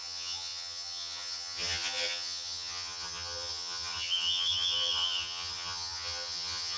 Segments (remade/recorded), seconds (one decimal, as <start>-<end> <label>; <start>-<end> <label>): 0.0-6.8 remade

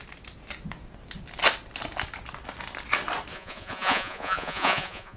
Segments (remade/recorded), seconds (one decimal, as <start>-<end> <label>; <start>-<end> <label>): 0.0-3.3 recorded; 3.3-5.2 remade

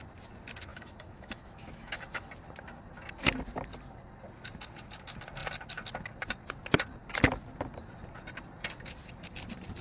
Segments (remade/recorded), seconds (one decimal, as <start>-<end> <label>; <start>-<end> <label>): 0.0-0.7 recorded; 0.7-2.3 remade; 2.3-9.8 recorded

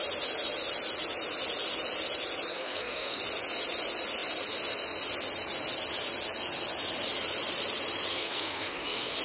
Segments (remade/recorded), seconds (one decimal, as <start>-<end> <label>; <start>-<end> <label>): 0.0-2.5 recorded; 2.5-3.2 remade; 3.2-8.1 recorded; 8.1-9.2 remade

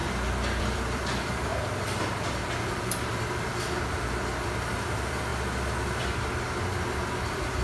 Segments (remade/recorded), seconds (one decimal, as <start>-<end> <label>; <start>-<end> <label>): 0.0-0.6 recorded; 0.6-1.5 remade; 1.5-2.6 recorded; 2.6-3.5 remade; 3.5-4.3 recorded; 4.3-5.3 remade; 5.3-6.6 recorded; 6.6-7.6 remade

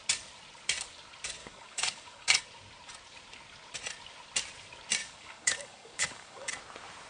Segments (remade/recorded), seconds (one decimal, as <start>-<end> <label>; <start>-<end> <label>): 0.0-1.4 recorded; 1.4-2.4 remade; 2.4-5.0 recorded; 5.0-6.5 remade; 6.5-7.1 recorded

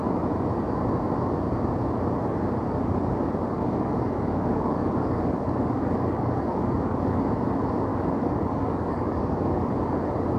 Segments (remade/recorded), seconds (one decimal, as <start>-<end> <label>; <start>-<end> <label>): 0.0-3.5 recorded; 3.5-7.2 remade; 7.2-7.9 recorded; 7.9-9.7 remade; 9.7-10.4 recorded